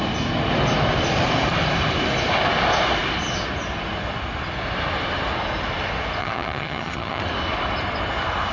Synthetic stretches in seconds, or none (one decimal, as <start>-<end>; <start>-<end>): 6.2-7.2